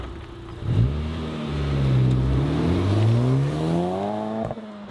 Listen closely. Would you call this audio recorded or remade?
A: recorded